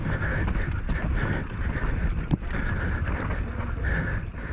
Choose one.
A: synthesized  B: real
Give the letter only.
B